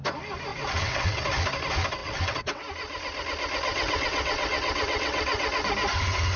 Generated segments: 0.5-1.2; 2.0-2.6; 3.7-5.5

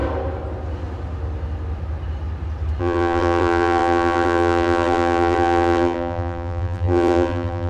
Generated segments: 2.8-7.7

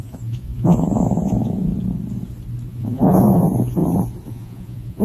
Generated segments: 0.0-1.7; 2.7-3.8; 4.3-5.0